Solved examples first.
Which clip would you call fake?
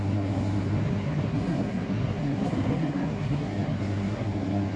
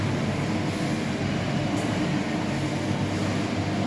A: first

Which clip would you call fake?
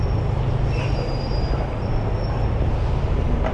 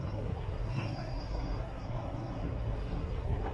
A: second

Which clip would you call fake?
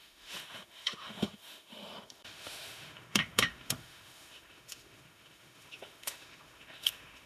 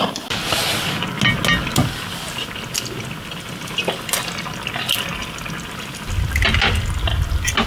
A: first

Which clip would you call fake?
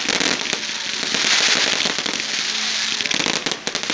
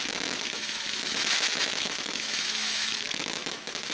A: second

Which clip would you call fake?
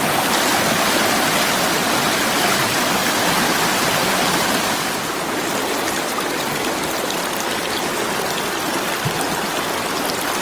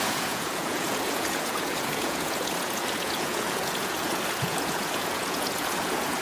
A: second